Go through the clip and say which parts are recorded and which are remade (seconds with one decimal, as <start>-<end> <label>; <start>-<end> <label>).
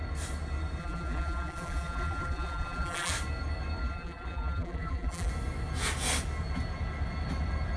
0.0-0.8 recorded; 0.8-3.1 remade; 3.1-3.8 recorded; 3.8-5.3 remade; 5.3-7.8 recorded